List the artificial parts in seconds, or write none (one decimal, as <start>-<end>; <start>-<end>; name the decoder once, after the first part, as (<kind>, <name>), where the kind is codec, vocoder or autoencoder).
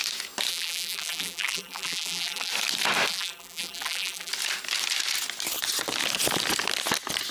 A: 0.5-2.5 (vocoder, BigVGAN v2); 3.1-4.3